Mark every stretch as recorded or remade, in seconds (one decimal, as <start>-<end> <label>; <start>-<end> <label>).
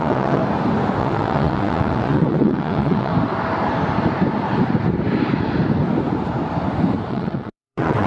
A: 0.0-0.4 remade; 0.4-1.0 recorded; 1.0-3.1 remade; 3.1-7.1 recorded; 7.1-8.1 remade